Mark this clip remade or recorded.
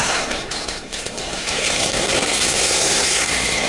remade